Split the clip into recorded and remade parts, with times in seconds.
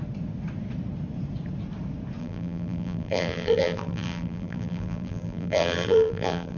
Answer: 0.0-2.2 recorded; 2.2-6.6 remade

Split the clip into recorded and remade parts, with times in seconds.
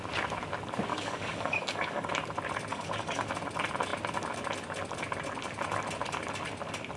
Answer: 0.0-0.9 recorded; 0.9-2.1 remade; 2.1-2.7 recorded; 2.7-3.3 remade; 3.3-7.0 recorded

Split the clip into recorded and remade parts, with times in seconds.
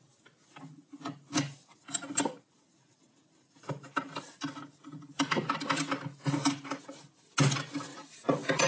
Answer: 0.0-8.7 recorded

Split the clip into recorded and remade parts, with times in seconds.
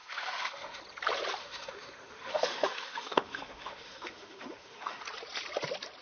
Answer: 0.0-0.8 remade; 0.8-1.4 recorded; 1.4-5.0 remade; 5.0-6.0 recorded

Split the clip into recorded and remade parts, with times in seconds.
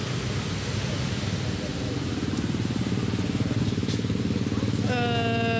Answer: 0.0-1.7 recorded; 1.7-4.2 remade; 4.2-5.6 recorded